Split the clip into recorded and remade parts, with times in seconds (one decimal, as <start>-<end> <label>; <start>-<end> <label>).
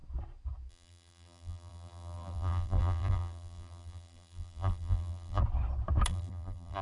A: 0.0-0.7 recorded; 0.7-5.4 remade; 5.4-6.1 recorded; 6.1-6.8 remade